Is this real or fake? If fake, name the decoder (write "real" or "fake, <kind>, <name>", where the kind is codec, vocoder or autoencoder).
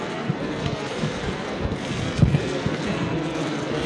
fake, codec, SNAC